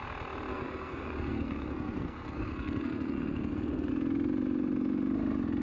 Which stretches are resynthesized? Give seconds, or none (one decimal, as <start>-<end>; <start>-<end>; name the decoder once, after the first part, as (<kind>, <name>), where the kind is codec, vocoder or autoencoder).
0.5-3.9 (codec, SNAC)